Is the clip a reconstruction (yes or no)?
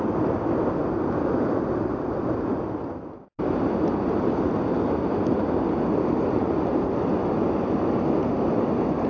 no